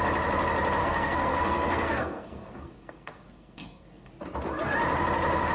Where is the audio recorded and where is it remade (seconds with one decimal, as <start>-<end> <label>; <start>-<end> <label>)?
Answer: 0.0-0.8 recorded; 0.8-4.1 remade; 4.1-5.5 recorded